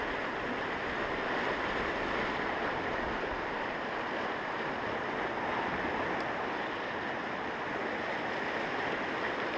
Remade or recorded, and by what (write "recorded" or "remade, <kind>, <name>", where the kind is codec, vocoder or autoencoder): recorded